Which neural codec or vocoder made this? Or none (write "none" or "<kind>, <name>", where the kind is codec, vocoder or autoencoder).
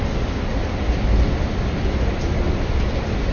none